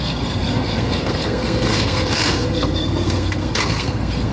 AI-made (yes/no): yes